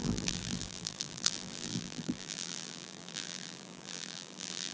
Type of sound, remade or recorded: remade